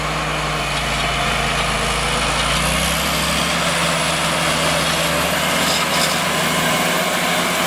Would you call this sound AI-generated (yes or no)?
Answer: no